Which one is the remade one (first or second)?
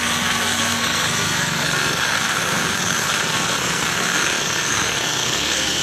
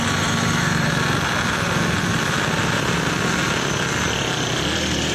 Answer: first